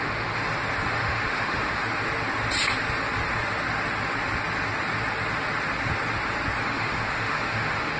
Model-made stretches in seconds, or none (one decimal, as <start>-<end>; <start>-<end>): 0.0-0.4; 0.9-1.8; 6.6-8.0